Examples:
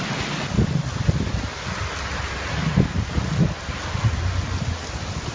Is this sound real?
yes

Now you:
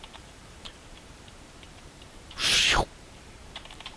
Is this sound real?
no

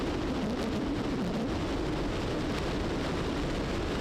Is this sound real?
yes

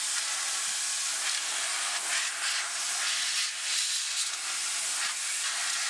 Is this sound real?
yes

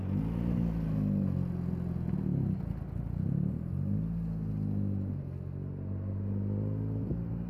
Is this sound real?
yes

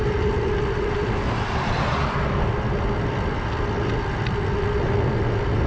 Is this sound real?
yes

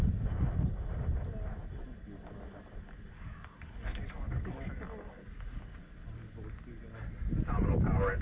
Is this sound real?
yes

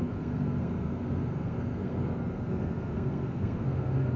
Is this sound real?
no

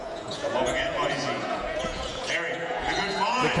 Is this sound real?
no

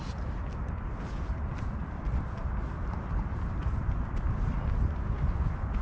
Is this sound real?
yes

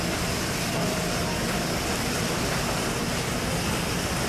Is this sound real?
no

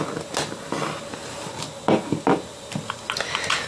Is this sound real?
yes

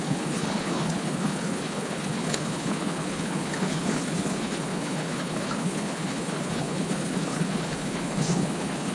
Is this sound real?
no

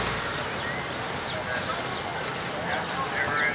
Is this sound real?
yes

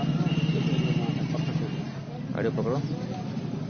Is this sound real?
yes